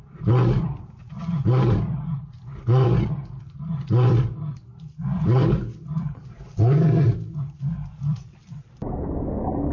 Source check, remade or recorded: remade